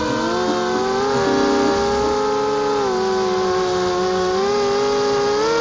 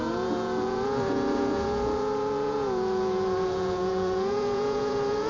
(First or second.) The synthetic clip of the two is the second